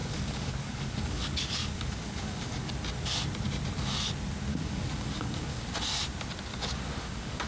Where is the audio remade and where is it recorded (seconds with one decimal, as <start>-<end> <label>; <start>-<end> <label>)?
0.0-2.7 remade; 2.7-4.5 recorded; 4.5-5.6 remade; 5.6-6.5 recorded; 6.5-7.5 remade